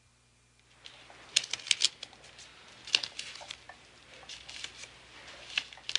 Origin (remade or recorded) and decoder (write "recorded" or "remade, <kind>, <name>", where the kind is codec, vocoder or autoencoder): recorded